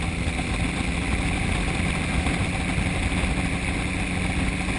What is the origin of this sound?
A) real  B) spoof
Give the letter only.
A